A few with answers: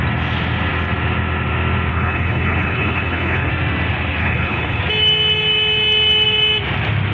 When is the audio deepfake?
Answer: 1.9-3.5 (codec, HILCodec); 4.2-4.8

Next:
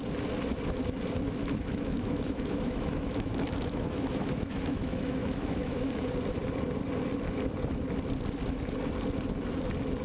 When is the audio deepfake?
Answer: 1.4-5.9 (autoencoder, DAC-VAE)

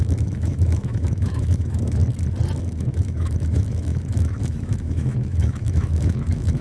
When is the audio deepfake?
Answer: 0.0-2.0 (autoencoder, DAC-VAE); 2.6-6.6

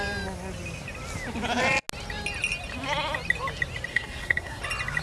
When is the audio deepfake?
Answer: 3.9-4.6 (codec, SNAC)

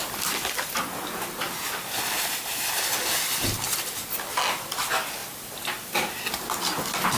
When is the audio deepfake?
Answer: none